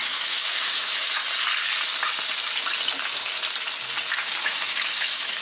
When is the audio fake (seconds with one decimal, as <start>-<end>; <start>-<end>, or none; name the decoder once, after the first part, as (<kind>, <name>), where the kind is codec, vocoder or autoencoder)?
0.0-1.2 (autoencoder, DAC-VAE); 4.4-5.4